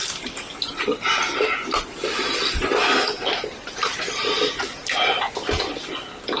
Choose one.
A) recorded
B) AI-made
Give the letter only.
A